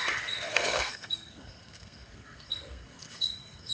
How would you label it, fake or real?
fake